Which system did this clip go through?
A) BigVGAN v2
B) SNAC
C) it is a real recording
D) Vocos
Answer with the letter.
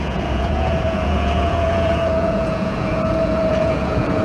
D